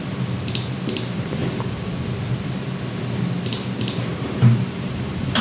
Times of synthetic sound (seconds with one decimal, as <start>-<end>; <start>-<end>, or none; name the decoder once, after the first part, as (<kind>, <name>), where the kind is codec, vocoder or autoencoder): 4.1-5.4 (vocoder, BigVGAN v2)